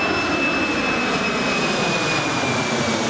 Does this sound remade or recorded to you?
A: recorded